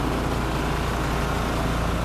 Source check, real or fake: real